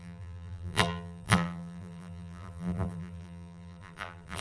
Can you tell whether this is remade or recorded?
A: remade